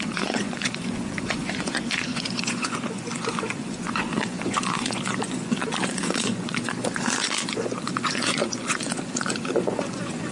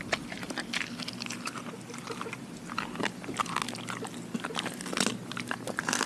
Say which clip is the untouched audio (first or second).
second